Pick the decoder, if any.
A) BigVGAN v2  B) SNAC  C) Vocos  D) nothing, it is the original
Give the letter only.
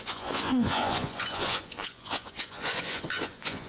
C